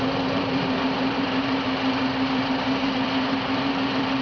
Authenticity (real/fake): fake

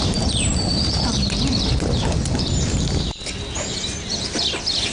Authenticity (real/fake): real